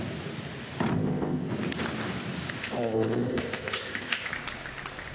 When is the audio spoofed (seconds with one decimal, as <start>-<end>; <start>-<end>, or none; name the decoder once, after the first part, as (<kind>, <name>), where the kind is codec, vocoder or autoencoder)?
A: 0.9-1.5 (codec, ZipCodec); 2.6-4.3